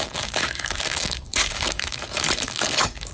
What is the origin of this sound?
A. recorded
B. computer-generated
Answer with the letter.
B